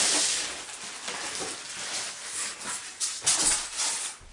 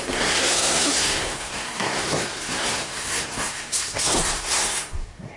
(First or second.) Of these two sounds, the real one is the first